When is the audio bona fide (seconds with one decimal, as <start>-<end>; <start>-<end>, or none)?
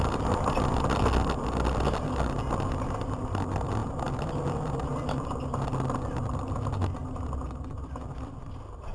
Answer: 0.0-8.9